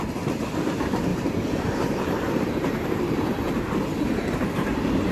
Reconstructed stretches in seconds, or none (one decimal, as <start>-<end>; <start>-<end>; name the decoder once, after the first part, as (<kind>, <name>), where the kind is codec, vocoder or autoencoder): 1.1-4.2 (vocoder, BigVGAN v2)